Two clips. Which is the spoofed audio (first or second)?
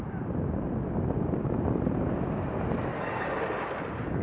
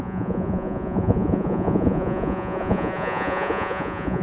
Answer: second